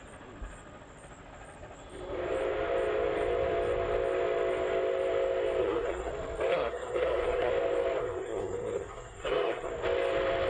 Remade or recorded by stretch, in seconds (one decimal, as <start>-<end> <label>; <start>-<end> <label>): 0.0-5.6 recorded; 5.6-6.1 remade; 6.1-6.5 recorded; 6.5-7.5 remade; 7.5-8.0 recorded; 8.0-9.7 remade; 9.7-10.5 recorded